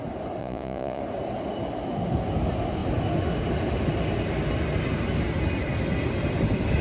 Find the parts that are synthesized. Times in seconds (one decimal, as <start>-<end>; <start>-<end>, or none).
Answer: 0.4-1.0